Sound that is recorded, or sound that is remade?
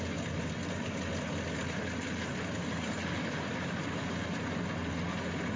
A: recorded